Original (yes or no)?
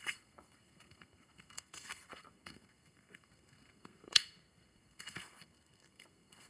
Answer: no